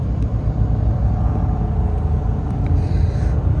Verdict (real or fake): fake